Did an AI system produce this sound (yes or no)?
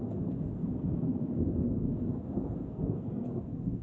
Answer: yes